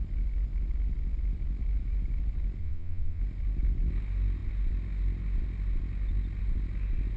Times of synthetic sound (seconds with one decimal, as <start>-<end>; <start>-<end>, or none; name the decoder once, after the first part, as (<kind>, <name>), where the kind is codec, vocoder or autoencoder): 2.6-3.2 (vocoder, Vocos)